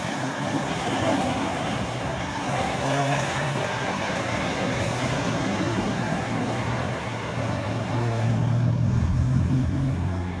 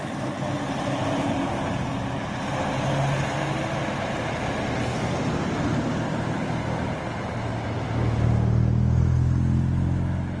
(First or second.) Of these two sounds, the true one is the second